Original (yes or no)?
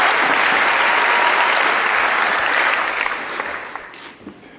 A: yes